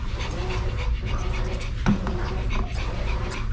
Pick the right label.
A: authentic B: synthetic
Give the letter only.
B